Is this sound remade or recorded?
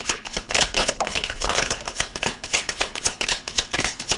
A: remade